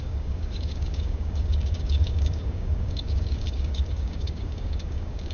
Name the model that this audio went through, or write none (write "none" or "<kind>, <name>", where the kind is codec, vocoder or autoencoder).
codec, DAC